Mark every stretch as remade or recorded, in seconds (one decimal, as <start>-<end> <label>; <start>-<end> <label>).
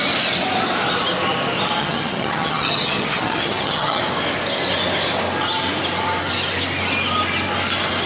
0.0-1.8 recorded; 1.8-4.0 remade; 4.0-8.1 recorded